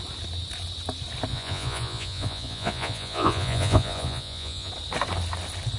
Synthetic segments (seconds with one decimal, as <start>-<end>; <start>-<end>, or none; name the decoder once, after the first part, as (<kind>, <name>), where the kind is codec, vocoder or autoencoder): 1.3-4.7 (vocoder, Vocos)